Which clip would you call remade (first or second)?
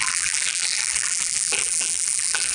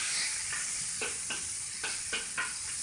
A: first